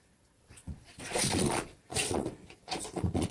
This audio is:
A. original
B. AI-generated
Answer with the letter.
B